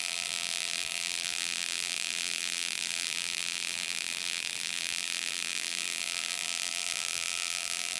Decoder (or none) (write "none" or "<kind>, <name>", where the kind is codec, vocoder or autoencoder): vocoder, BigVGAN v2